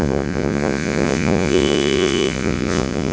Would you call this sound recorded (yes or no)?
no